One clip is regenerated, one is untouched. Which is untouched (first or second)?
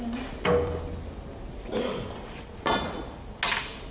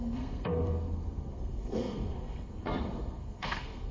first